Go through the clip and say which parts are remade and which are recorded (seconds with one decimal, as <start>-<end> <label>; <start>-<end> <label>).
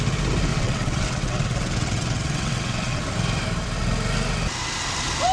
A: 0.0-0.5 recorded; 0.5-3.0 remade; 3.0-5.3 recorded